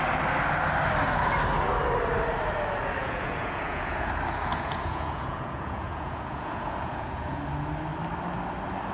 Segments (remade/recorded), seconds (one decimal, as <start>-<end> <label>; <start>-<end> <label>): 0.0-3.0 recorded; 3.0-4.1 remade; 4.1-4.5 recorded; 4.5-7.4 remade; 7.4-8.9 recorded